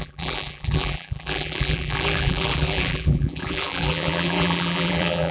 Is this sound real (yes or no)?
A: no